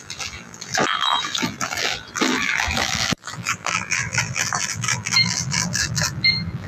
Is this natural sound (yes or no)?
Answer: no